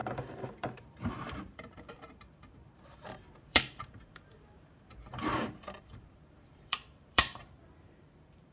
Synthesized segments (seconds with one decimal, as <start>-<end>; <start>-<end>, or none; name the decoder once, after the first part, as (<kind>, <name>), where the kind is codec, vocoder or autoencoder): 0.0-8.5 (vocoder, BigVGAN v2)